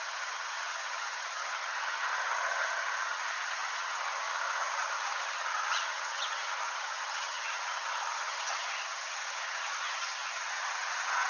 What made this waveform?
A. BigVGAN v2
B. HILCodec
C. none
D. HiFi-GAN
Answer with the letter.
D